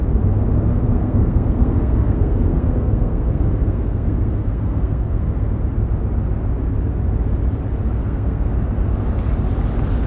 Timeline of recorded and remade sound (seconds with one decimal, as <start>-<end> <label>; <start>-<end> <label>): 0.0-0.7 recorded; 0.7-5.5 remade; 5.5-8.0 recorded; 8.0-8.5 remade; 8.5-10.1 recorded